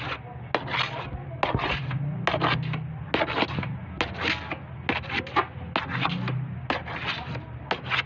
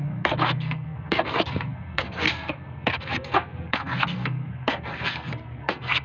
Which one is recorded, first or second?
first